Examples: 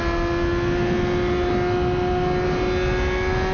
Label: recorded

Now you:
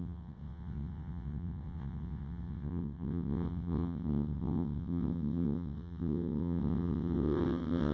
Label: remade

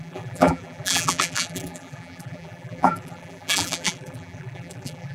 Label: remade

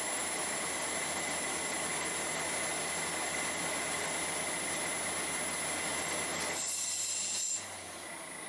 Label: recorded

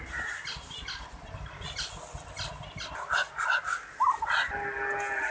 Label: recorded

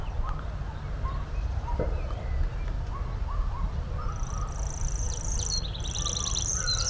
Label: recorded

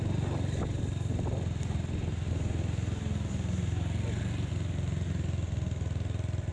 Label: recorded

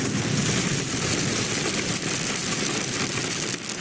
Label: recorded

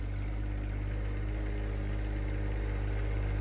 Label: recorded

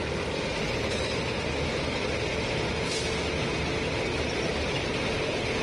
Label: recorded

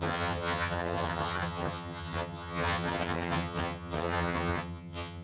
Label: remade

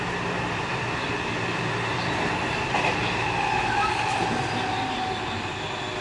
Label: recorded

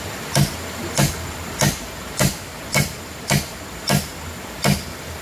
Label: remade